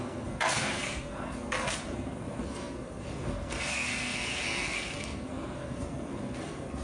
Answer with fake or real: fake